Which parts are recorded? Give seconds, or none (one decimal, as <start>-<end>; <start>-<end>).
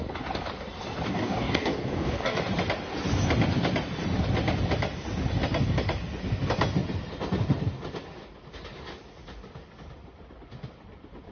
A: 0.0-1.1; 2.4-11.3